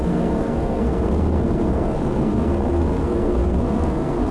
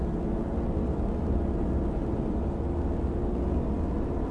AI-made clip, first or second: first